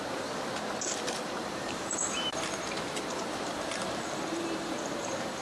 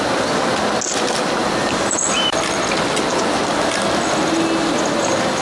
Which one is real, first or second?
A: second